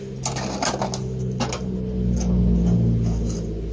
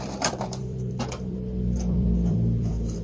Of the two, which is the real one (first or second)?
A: first